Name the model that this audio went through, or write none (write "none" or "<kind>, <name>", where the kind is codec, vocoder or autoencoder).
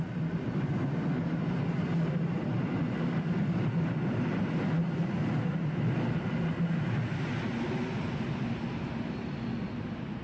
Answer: none